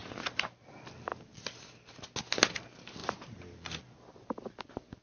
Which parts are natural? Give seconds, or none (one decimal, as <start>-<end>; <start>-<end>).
0.6-3.0; 3.8-5.0